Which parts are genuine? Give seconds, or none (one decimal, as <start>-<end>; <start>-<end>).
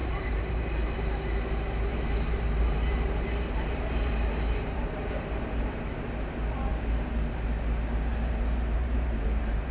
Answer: 0.6-1.9; 5.8-8.1